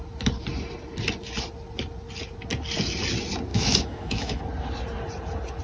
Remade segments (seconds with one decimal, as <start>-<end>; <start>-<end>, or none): 3.5-4.4